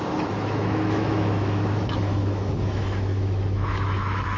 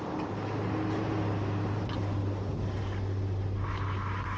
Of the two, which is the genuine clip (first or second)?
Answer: second